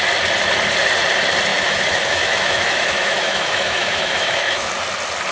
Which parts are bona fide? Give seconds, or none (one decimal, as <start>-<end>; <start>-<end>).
0.0-1.5; 4.7-5.3